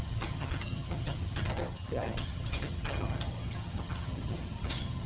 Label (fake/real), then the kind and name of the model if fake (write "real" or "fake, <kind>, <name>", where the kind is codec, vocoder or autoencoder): fake, vocoder, HiFi-GAN